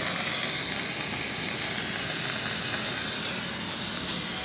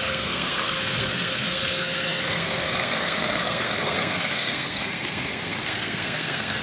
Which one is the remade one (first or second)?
second